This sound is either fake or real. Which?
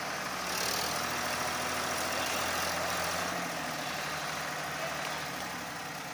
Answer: real